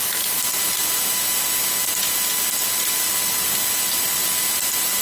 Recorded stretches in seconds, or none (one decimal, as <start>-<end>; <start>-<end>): 1.0-5.0